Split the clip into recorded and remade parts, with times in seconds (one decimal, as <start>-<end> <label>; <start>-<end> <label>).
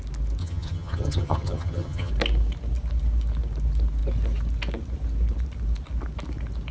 0.0-0.4 recorded; 0.4-2.1 remade; 2.1-6.7 recorded